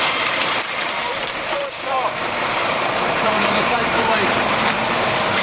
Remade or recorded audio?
remade